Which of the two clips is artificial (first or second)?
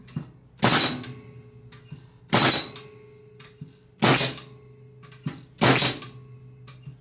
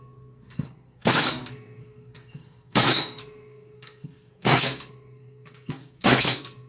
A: second